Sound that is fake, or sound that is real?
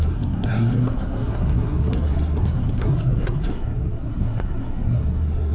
fake